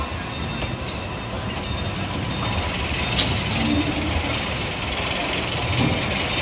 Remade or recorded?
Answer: recorded